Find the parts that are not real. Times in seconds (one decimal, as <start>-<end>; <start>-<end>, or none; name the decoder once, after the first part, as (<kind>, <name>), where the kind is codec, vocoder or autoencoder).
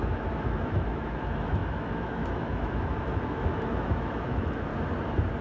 0.0-4.7 (autoencoder, DAC-VAE)